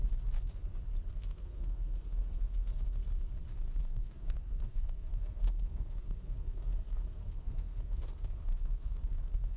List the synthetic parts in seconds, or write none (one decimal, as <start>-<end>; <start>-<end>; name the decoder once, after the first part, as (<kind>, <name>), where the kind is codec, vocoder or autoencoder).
1.1-3.0 (codec, SNAC); 3.8-9.6